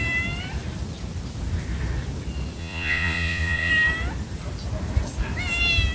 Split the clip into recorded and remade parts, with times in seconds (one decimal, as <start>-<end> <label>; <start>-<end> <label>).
0.0-2.6 recorded; 2.6-3.7 remade; 3.7-5.9 recorded